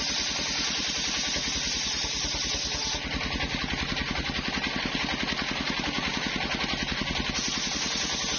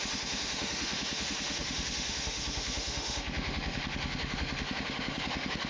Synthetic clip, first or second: second